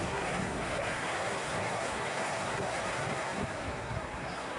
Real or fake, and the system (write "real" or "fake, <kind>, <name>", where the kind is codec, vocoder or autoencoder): fake, codec, SNAC